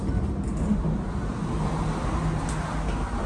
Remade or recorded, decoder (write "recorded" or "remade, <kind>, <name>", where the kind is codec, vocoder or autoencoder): recorded